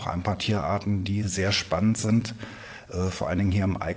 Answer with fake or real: fake